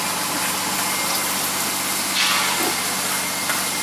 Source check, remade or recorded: recorded